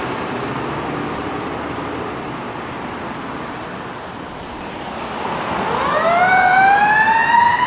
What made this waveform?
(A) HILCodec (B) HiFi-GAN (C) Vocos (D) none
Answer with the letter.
D